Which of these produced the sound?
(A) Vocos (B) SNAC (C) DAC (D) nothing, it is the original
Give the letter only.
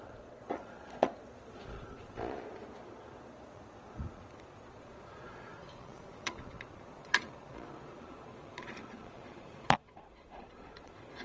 A